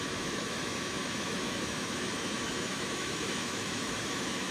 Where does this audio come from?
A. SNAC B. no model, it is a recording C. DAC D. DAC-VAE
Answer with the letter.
D